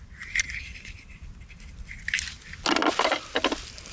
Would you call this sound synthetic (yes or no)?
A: no